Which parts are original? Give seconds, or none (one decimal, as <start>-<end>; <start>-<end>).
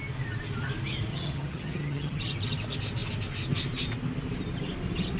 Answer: 0.0-1.1; 2.2-5.2